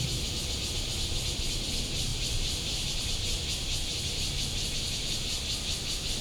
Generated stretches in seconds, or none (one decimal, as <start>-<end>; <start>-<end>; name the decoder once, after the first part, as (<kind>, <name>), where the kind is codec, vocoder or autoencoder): 2.1-4.0 (vocoder, BigVGAN v2)